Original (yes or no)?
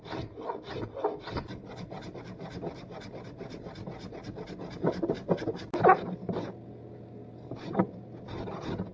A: yes